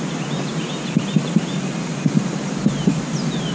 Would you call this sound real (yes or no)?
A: yes